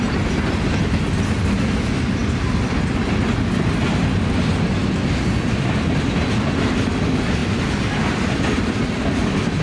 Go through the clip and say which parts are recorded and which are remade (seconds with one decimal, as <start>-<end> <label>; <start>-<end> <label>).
0.0-9.6 recorded